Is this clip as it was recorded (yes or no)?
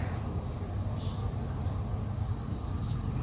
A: yes